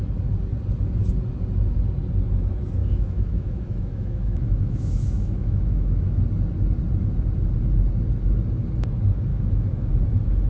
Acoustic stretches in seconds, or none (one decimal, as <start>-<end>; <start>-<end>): 0.0-2.8; 6.2-9.3; 9.9-10.5

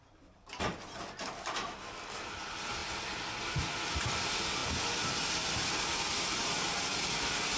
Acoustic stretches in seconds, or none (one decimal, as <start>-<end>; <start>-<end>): 4.6-5.2

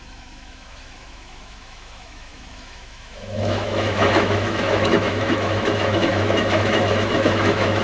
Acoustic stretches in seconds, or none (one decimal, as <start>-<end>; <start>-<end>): none

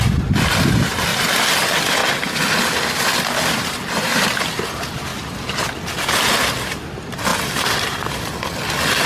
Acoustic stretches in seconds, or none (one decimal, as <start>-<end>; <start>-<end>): 0.0-9.1

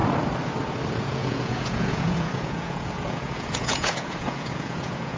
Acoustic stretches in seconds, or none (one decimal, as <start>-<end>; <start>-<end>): 0.0-0.9